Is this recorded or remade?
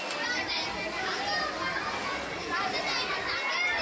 recorded